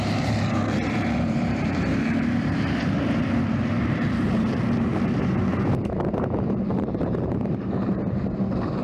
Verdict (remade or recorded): remade